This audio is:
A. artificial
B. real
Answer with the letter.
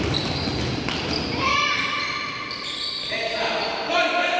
B